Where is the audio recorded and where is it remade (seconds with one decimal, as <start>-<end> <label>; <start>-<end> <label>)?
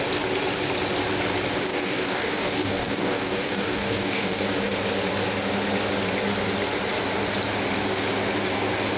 0.0-1.7 recorded; 1.7-4.4 remade; 4.4-9.0 recorded